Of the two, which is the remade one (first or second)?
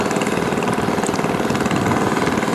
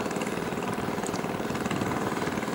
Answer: second